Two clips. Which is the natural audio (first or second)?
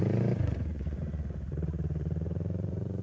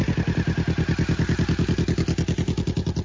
second